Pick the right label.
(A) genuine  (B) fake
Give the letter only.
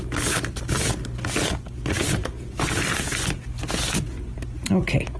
A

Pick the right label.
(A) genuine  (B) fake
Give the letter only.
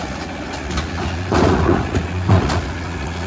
B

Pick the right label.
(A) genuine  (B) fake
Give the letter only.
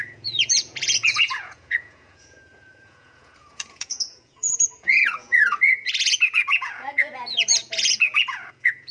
B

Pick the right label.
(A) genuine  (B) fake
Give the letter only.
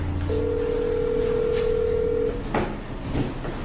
A